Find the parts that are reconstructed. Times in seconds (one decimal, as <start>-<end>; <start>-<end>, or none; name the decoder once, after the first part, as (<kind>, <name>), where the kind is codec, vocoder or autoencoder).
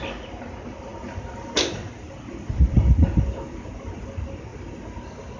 none